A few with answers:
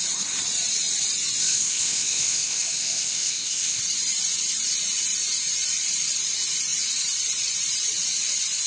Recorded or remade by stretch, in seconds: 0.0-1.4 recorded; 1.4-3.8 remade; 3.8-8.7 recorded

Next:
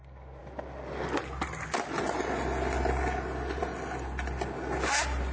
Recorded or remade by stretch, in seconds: 0.0-5.3 recorded

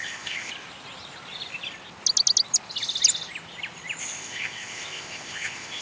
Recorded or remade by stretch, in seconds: 0.0-0.5 remade; 0.5-4.0 recorded; 4.0-5.8 remade

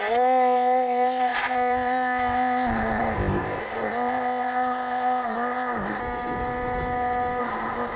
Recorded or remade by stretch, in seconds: 0.0-6.0 remade; 6.0-7.4 recorded; 7.4-8.0 remade

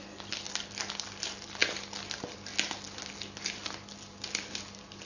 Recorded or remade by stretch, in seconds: 0.0-5.0 recorded